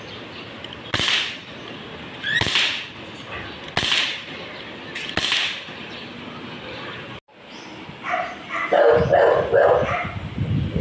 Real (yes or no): yes